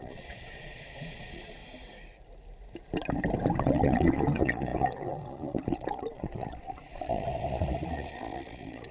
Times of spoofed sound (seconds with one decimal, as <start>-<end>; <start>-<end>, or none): 0.0-1.6; 3.6-8.9